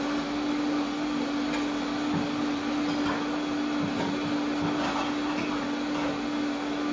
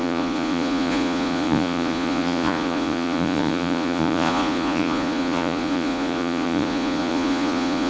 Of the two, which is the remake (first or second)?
second